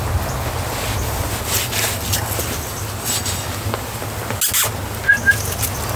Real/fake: real